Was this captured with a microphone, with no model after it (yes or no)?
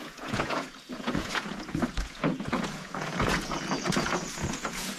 no